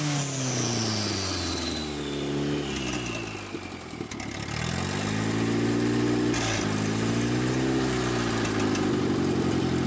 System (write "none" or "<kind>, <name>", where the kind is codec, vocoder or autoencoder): none